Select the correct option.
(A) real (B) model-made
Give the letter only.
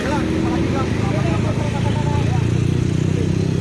A